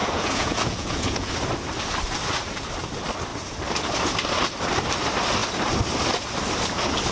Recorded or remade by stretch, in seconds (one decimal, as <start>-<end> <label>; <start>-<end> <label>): 0.0-1.3 remade; 1.3-7.1 recorded